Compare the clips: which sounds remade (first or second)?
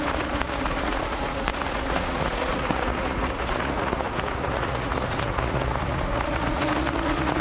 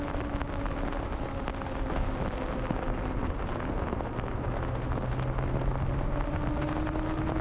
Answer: first